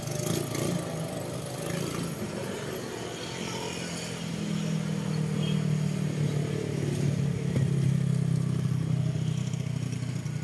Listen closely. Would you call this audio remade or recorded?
recorded